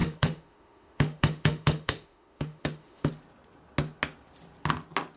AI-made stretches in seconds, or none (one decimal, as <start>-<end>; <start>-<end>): 0.0-3.1